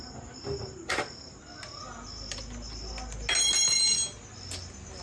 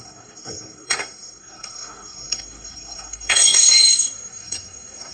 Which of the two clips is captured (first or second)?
first